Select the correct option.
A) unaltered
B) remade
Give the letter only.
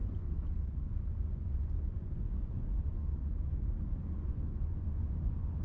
B